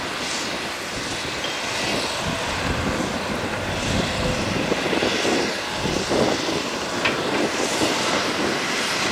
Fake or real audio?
real